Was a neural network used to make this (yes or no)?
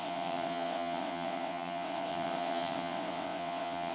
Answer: yes